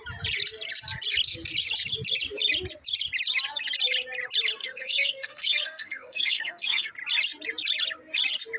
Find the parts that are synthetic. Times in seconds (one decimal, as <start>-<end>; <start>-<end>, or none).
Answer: 4.6-6.9

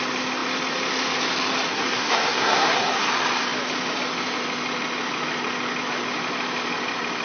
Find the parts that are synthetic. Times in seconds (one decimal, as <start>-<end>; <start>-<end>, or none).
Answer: 1.7-3.1

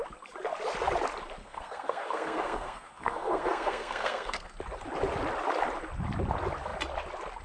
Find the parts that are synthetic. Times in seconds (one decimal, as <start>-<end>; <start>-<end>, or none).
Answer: 1.4-4.5

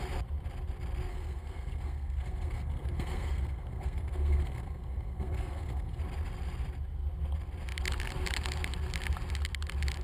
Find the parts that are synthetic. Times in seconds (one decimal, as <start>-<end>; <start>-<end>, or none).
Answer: 1.1-6.0

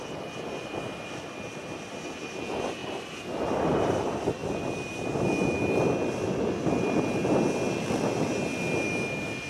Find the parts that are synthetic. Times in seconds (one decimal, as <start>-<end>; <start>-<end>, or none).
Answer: none

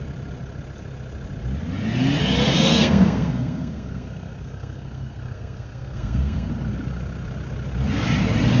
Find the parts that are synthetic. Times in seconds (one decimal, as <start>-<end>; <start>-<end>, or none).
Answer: 2.5-6.5

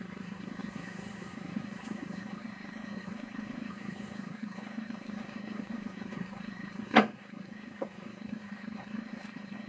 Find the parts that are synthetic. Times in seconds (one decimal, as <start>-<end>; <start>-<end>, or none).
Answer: 0.0-9.7

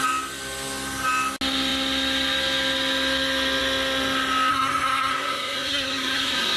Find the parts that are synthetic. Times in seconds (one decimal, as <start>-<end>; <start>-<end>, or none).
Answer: 4.5-6.6